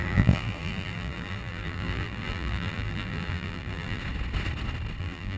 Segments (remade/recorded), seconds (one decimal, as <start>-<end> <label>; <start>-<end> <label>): 0.0-4.0 remade; 4.0-5.0 recorded; 5.0-5.4 remade